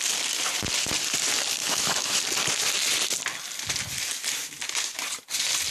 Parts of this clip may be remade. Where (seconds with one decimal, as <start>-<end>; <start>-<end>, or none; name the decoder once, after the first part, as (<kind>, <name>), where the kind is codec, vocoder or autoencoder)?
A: 1.6-2.2 (autoencoder, DAC-VAE)